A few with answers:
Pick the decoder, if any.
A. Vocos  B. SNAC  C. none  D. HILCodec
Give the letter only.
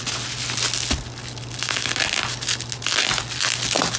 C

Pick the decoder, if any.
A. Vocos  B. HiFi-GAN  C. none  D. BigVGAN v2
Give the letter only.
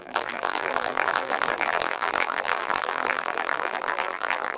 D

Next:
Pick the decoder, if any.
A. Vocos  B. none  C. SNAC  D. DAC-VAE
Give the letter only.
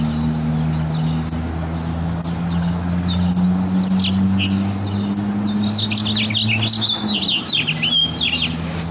B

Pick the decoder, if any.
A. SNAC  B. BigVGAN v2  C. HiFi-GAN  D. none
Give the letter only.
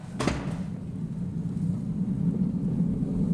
D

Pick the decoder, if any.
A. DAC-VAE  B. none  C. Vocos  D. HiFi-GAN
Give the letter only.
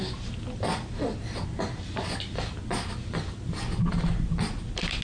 B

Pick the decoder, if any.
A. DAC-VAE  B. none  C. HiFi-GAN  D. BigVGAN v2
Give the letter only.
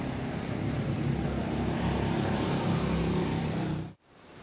D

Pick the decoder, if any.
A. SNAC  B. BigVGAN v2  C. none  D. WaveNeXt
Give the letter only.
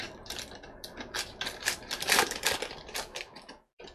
B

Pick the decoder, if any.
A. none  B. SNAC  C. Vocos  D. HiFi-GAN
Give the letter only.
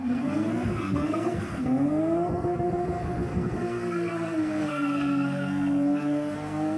B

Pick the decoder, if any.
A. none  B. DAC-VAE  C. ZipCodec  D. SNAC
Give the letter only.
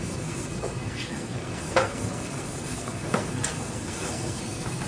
D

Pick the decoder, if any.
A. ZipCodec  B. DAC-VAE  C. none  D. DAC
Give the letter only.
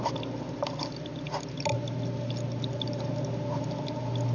C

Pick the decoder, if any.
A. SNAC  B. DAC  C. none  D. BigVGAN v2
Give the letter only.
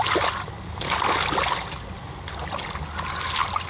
C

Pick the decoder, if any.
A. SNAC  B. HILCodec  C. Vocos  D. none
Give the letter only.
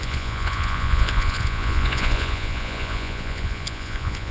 C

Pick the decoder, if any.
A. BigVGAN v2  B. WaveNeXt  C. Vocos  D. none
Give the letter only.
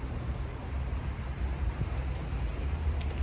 A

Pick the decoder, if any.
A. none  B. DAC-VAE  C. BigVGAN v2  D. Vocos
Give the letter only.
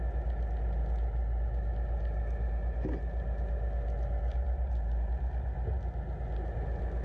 A